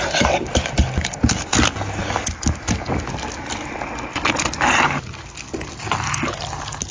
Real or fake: real